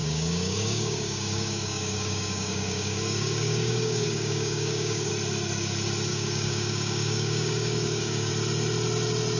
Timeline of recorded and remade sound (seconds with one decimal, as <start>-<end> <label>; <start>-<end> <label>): 0.0-5.1 remade; 5.1-6.1 recorded; 6.1-8.3 remade; 8.3-9.4 recorded